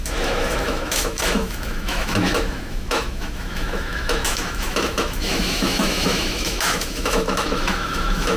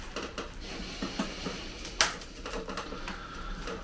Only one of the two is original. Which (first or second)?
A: second